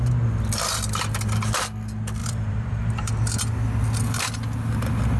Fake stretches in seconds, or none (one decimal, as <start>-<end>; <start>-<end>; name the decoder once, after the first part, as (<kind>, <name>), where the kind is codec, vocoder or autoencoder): 2.2-3.1 (vocoder, BigVGAN v2)